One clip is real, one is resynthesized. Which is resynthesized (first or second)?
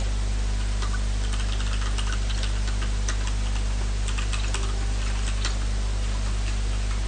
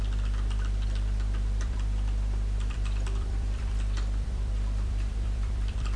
second